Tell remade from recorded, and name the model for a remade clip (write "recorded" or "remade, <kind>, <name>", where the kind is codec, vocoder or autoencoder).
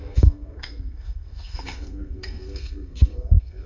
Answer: remade, codec, SNAC